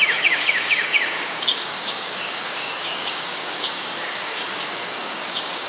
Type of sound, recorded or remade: remade